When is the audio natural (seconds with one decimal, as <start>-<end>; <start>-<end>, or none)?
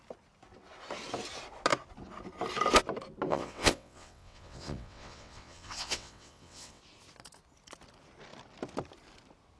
0.0-3.3; 6.8-9.6